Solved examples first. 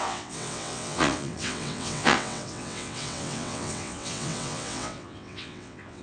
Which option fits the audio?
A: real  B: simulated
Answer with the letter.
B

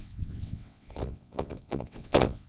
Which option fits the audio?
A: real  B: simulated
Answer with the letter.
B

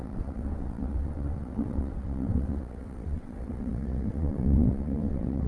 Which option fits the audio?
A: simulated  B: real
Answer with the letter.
A